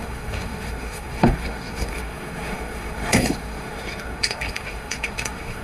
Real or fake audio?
fake